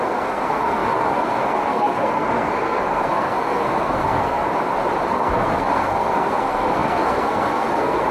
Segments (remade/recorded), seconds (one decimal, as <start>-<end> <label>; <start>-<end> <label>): 0.0-4.5 remade; 4.5-5.1 recorded; 5.1-8.1 remade